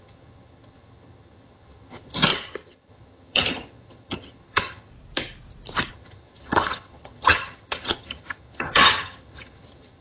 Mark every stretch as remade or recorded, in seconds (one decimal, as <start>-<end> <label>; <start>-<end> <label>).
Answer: 0.0-4.9 remade; 4.9-5.9 recorded; 5.9-10.0 remade